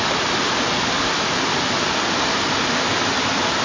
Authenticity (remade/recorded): recorded